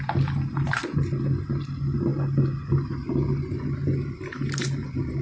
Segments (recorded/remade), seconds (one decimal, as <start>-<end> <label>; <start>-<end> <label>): 0.0-5.2 recorded